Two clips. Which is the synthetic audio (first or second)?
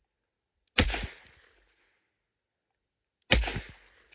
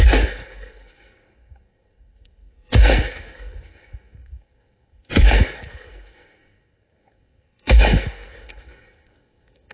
second